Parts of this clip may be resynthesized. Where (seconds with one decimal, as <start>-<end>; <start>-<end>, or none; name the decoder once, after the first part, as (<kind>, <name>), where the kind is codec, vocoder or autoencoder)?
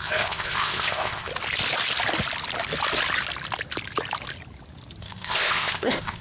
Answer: 0.0-1.3 (codec, ZipCodec); 5.0-6.2